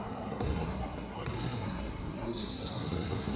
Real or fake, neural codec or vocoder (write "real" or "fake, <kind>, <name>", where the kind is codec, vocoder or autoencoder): fake, codec, SNAC